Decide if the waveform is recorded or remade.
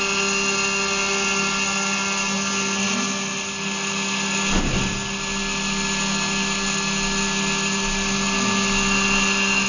recorded